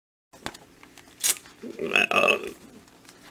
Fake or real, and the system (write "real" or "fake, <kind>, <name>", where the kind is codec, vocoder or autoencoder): real